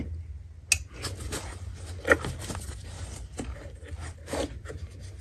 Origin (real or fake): real